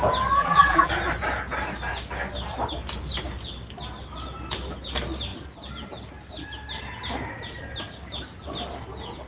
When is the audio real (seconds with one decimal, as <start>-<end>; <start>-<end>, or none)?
0.0-0.4; 0.9-9.3